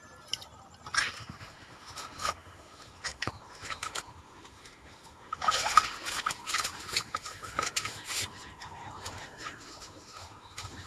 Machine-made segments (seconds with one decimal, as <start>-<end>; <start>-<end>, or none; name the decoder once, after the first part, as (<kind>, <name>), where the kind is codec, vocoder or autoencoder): 1.0-10.9 (autoencoder, DAC-VAE)